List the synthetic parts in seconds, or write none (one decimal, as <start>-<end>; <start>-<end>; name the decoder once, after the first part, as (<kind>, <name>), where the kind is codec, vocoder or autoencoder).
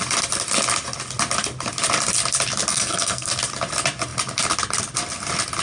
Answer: 2.7-3.3 (codec, SNAC)